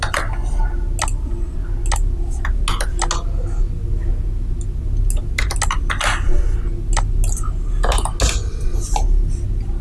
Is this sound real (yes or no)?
yes